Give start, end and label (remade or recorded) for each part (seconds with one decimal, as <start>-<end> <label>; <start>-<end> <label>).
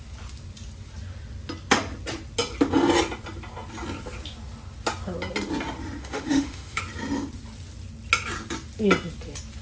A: 0.0-6.0 recorded; 6.0-6.8 remade; 6.8-9.6 recorded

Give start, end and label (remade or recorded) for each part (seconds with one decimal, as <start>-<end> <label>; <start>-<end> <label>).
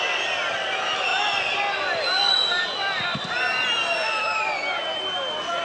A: 0.0-5.6 recorded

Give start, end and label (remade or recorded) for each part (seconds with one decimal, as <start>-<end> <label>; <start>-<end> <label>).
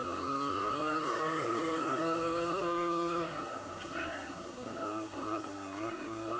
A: 0.0-6.4 remade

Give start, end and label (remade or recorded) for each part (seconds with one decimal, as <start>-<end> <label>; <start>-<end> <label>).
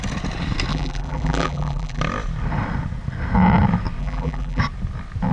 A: 0.0-0.7 recorded; 0.7-2.0 remade; 2.0-4.0 recorded; 4.0-4.6 remade; 4.6-5.3 recorded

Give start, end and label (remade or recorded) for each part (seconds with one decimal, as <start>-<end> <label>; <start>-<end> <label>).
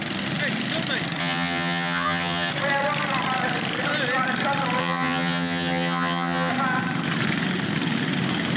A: 0.0-1.2 recorded; 1.2-2.5 remade; 2.5-4.8 recorded; 4.8-6.5 remade; 6.5-8.6 recorded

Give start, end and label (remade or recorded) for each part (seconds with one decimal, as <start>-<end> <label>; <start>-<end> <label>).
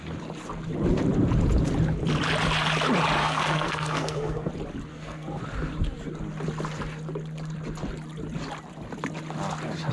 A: 0.0-3.2 recorded; 3.2-4.5 remade; 4.5-4.9 recorded; 4.9-5.4 remade; 5.4-9.9 recorded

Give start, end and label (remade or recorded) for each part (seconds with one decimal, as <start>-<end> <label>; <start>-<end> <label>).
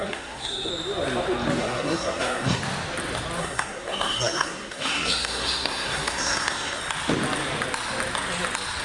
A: 0.0-0.7 remade; 0.7-1.6 recorded; 1.6-2.6 remade; 2.6-3.4 recorded; 3.4-6.8 remade; 6.8-8.8 recorded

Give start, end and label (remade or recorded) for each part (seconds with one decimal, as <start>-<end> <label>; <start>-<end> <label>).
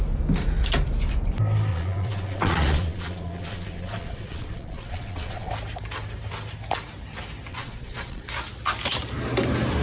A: 0.0-1.7 recorded; 1.7-5.5 remade; 5.5-7.5 recorded; 7.5-8.3 remade; 8.3-9.8 recorded